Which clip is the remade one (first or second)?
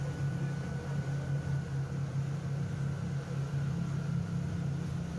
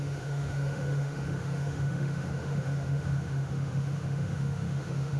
second